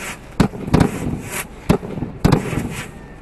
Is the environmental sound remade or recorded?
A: recorded